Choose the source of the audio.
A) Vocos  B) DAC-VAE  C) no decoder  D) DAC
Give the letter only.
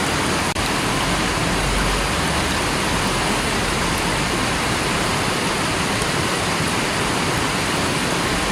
C